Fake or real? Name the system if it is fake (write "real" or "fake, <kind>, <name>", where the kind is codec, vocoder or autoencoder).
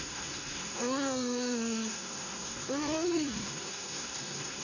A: fake, codec, SNAC